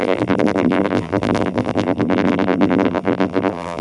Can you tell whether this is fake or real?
fake